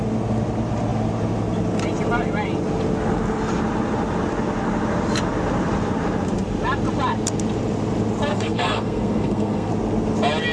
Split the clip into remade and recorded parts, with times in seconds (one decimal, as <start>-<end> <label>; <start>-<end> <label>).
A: 0.0-8.3 recorded; 8.3-9.7 remade; 9.7-10.5 recorded